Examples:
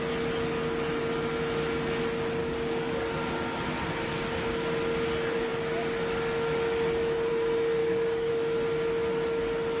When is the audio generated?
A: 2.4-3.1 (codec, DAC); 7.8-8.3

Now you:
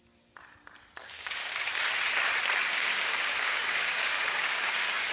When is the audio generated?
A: 1.0-1.7 (codec, DAC); 2.6-5.1

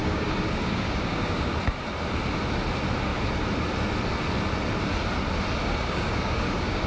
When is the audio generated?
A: 0.0-1.5 (codec, DAC); 5.6-6.9

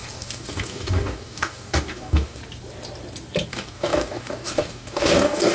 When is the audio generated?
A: 0.0-2.4 (codec, DAC); 3.5-5.5

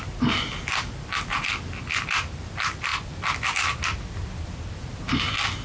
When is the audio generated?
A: none

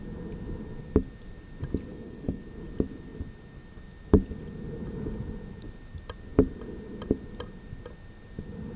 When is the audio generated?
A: 1.9-2.4 (codec, DAC)

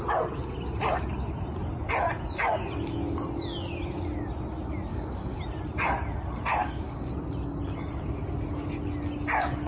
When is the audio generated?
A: 4.9-5.4 (codec, DAC); 6.5-7.1

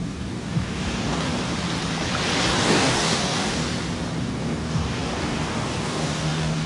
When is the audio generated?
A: 0.0-1.3 (codec, DAC); 2.6-3.6; 4.2-6.7